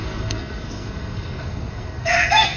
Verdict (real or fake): fake